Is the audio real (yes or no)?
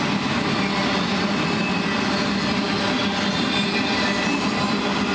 yes